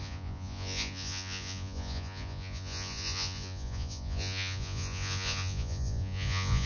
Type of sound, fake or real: fake